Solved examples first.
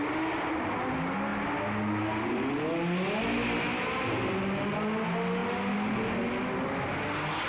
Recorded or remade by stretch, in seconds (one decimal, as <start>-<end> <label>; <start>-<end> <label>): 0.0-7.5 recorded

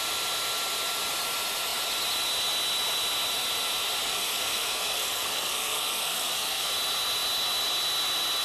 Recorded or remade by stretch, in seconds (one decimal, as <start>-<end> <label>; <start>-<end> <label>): 0.0-4.0 recorded; 4.0-6.7 remade; 6.7-8.4 recorded

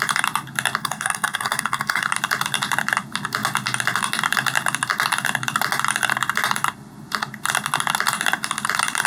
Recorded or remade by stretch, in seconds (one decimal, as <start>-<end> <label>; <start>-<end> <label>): 0.0-0.8 recorded; 0.8-2.1 remade; 2.1-9.1 recorded

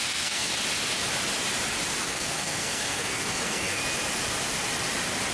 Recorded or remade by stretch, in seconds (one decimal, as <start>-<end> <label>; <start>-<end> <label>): 0.0-0.5 remade; 0.5-2.0 recorded; 2.0-3.8 remade; 3.8-5.3 recorded